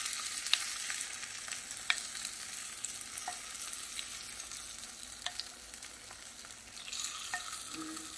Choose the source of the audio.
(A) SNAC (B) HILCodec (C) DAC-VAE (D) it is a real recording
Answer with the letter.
D